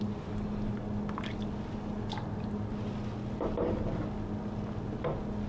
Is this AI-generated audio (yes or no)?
no